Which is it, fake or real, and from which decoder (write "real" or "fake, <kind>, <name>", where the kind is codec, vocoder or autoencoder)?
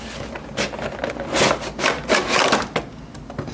real